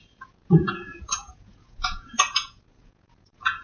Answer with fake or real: fake